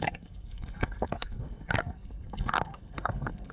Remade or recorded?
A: remade